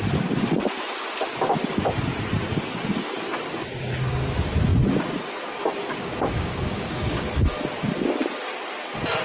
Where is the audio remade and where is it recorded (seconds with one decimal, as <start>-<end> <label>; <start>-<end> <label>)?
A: 0.0-5.9 recorded; 5.9-7.3 remade; 7.3-9.2 recorded